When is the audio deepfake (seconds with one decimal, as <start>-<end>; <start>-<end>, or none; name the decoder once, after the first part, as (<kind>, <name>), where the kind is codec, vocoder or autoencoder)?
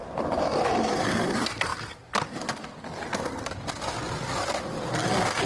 0.0-1.1 (vocoder, BigVGAN v2)